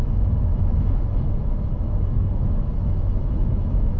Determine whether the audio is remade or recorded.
remade